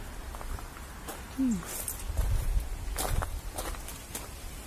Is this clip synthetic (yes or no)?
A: no